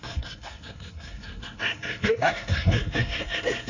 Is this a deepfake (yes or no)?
yes